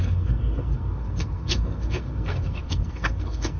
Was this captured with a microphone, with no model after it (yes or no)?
no